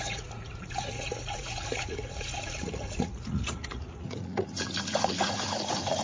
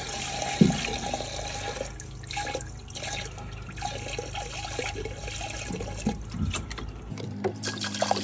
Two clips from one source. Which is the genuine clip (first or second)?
second